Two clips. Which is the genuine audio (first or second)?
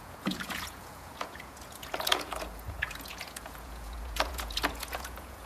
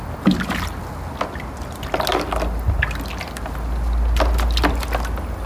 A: second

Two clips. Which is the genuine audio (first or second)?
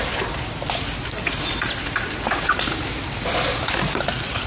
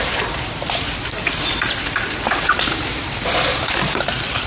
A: first